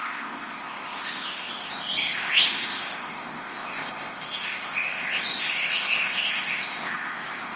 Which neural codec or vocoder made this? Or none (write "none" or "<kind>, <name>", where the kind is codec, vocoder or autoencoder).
codec, ZipCodec